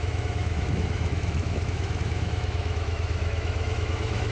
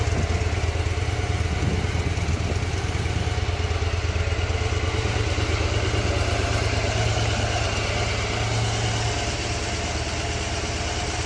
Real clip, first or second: second